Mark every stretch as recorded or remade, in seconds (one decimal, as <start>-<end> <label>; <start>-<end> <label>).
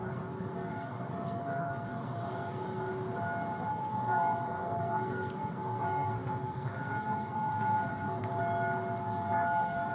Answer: 0.0-2.9 remade; 2.9-3.7 recorded; 3.7-8.3 remade; 8.3-9.0 recorded; 9.0-9.9 remade